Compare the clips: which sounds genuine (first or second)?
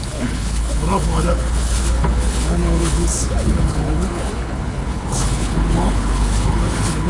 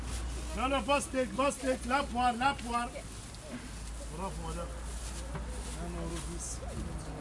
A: second